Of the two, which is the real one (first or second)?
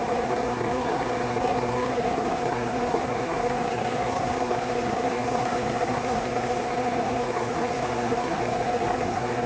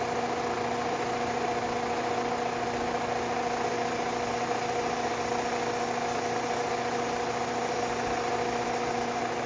second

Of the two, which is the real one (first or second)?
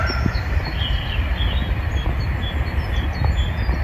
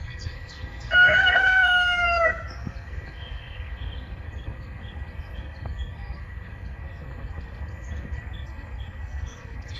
first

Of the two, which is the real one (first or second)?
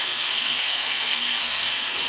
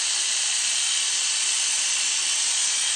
second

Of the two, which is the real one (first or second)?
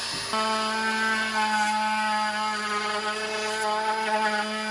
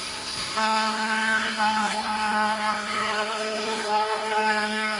first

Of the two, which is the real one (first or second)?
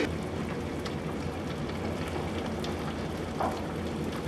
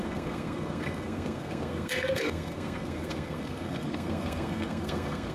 first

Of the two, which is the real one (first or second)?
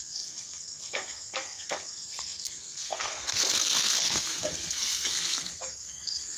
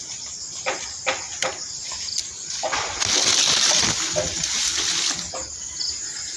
second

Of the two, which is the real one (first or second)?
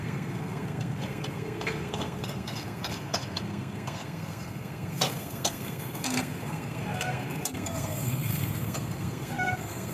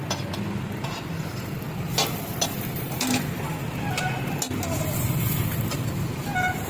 second